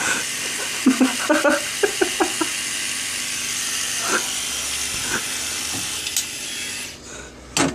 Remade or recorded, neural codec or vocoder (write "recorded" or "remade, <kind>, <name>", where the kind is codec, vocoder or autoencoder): recorded